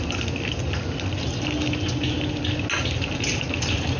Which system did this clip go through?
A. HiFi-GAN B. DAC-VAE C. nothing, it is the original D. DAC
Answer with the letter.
C